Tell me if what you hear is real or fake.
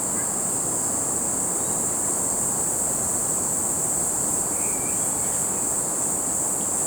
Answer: fake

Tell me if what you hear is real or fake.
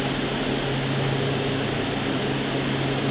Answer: real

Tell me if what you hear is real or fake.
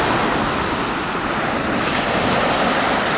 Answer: real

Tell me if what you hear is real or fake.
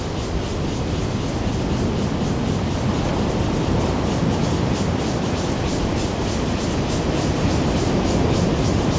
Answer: real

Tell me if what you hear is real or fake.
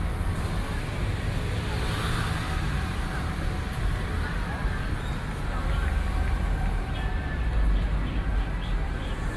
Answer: real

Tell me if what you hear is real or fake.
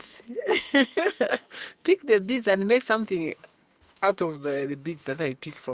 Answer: fake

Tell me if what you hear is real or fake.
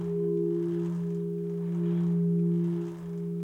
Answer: real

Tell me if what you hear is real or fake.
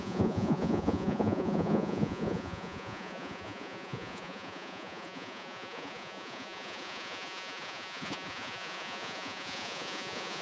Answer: fake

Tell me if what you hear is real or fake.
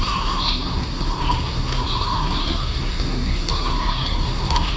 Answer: fake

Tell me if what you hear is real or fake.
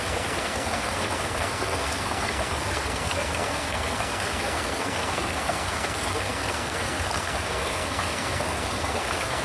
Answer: fake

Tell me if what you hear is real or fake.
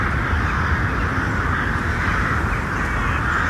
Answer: real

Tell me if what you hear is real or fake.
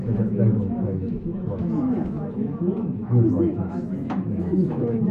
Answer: fake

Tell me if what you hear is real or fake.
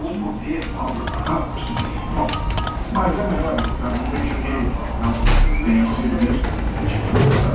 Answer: real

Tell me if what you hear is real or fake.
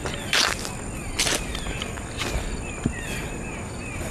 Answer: real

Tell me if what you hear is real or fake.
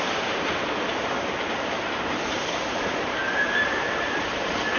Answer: fake